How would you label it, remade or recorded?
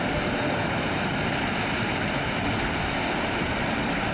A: recorded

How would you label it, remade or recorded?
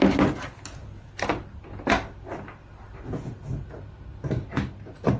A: recorded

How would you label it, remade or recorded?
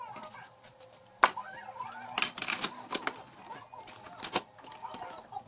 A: recorded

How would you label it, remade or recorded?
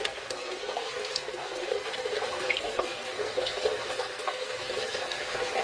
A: remade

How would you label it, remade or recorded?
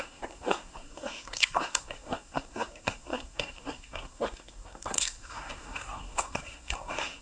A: remade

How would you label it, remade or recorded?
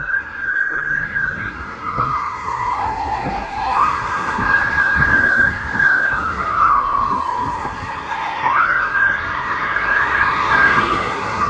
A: remade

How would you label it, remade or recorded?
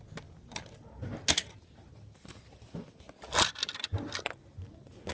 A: recorded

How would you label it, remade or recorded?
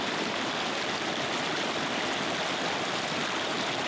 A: recorded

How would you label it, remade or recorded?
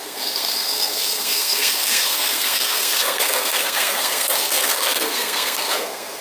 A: remade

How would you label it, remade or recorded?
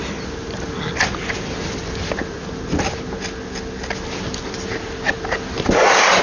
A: recorded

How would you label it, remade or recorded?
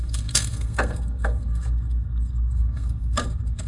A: remade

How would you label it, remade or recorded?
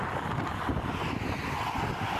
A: recorded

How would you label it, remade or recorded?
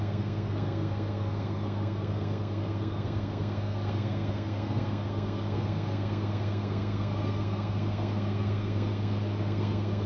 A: remade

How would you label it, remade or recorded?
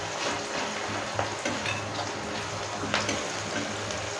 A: recorded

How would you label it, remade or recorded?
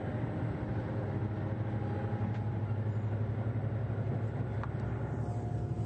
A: recorded